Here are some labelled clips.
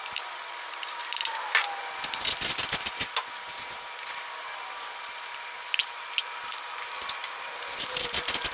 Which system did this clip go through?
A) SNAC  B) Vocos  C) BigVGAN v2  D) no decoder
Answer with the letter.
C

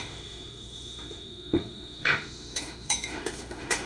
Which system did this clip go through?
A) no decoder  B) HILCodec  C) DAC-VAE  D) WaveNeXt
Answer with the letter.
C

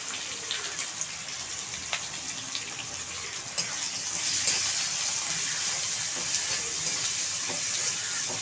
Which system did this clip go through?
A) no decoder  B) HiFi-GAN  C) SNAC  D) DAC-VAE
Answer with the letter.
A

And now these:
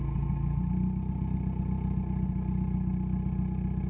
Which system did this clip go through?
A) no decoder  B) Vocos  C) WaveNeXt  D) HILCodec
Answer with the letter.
A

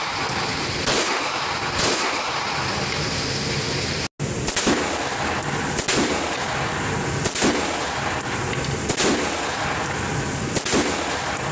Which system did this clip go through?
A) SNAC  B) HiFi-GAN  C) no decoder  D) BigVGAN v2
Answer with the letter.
C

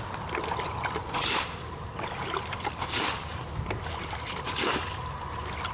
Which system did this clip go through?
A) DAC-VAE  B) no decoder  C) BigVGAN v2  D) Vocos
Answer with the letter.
C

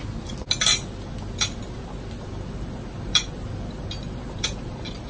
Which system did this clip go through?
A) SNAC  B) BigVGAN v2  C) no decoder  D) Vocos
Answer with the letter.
C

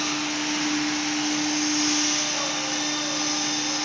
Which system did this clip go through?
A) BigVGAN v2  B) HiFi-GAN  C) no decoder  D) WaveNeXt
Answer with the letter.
C